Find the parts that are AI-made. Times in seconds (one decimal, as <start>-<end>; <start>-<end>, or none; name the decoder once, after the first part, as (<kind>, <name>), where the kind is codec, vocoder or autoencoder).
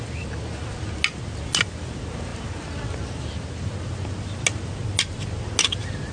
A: none